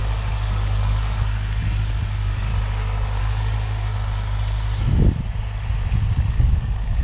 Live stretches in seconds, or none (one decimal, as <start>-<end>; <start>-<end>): 2.5-3.2; 3.9-6.3